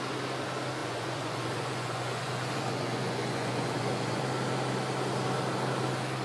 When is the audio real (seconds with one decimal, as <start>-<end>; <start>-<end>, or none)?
0.0-0.8; 4.2-6.2